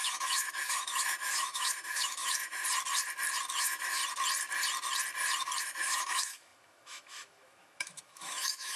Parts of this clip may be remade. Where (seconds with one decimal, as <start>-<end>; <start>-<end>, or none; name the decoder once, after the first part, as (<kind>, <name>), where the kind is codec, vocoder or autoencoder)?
0.0-2.6 (autoencoder, DAC-VAE); 3.6-4.0; 5.6-8.8